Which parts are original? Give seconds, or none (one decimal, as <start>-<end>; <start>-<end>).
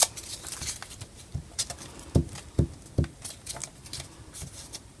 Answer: 0.0-3.6; 4.6-5.0